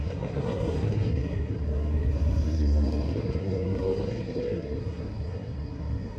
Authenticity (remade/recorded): remade